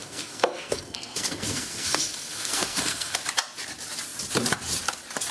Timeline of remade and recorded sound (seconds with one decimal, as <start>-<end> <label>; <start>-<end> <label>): 0.0-3.2 remade; 3.2-5.3 recorded